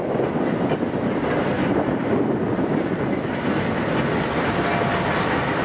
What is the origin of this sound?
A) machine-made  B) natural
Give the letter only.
B